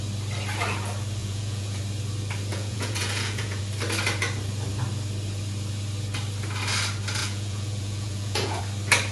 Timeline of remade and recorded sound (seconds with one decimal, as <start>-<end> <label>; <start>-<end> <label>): 0.0-1.2 recorded; 1.2-1.8 remade; 1.8-2.5 recorded; 2.5-3.6 remade; 3.6-7.2 recorded; 7.2-8.6 remade; 8.6-9.1 recorded